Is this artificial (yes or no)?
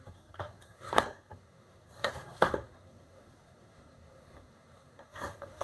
yes